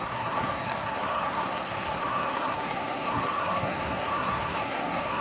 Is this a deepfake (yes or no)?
yes